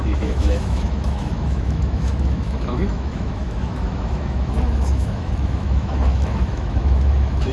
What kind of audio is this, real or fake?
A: fake